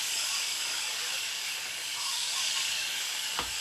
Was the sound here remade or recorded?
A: remade